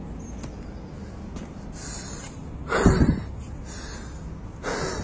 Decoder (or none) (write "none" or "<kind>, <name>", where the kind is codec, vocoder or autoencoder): none